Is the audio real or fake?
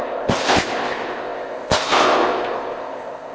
fake